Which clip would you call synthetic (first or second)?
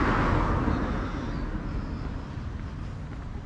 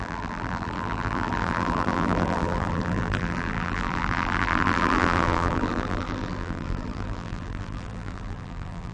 second